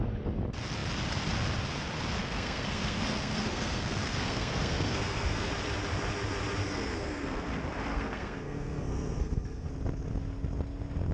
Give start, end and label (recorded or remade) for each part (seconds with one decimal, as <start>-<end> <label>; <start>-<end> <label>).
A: 0.0-2.2 recorded; 2.2-5.5 remade; 5.5-6.6 recorded; 6.6-7.5 remade; 7.5-7.9 recorded; 7.9-9.7 remade; 9.7-11.1 recorded